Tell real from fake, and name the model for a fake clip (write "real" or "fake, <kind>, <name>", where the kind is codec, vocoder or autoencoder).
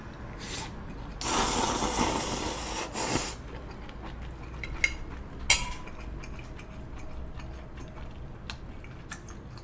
real